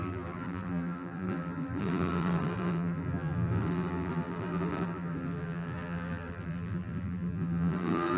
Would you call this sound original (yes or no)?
no